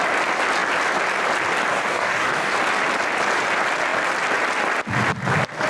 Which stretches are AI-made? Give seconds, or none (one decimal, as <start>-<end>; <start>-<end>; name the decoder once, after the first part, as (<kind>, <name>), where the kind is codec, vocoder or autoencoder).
1.7-2.5 (codec, DAC)